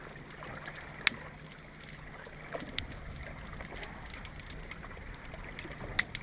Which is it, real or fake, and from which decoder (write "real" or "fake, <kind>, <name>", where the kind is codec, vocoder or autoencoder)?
real